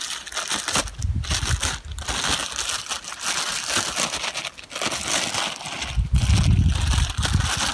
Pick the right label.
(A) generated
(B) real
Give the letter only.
B